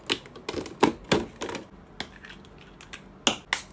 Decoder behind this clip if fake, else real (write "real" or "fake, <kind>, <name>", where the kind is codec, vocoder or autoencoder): real